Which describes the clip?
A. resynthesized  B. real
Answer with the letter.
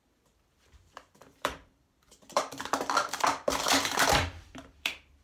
A